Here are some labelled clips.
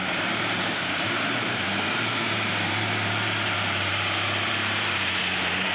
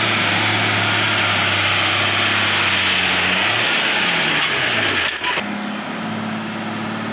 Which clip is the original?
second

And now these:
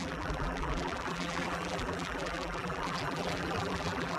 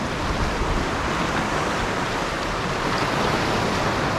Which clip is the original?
second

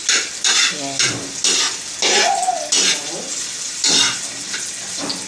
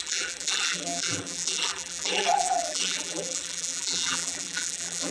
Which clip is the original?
first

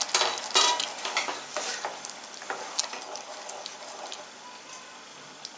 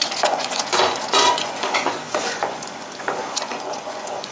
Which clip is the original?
first